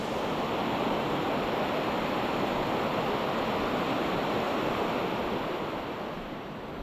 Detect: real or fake real